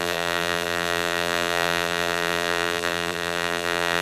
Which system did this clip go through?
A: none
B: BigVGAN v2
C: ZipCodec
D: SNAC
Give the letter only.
B